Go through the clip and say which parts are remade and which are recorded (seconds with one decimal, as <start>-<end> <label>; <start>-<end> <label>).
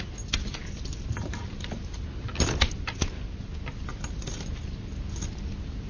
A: 0.0-5.9 recorded